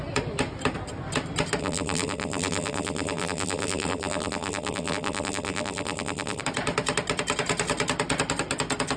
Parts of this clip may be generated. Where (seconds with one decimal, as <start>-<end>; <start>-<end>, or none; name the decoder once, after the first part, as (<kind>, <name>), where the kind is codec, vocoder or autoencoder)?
1.6-6.4 (vocoder, BigVGAN v2)